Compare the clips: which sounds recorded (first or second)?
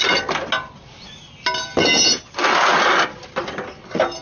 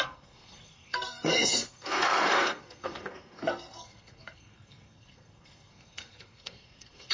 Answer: first